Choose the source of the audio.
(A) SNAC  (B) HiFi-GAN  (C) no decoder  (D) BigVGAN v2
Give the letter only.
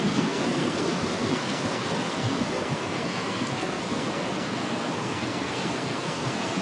A